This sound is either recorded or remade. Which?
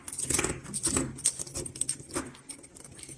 recorded